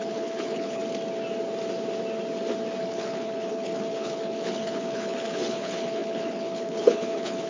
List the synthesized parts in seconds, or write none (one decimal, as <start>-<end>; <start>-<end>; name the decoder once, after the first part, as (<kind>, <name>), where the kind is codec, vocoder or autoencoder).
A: 0.0-0.8 (codec, HILCodec); 2.8-7.5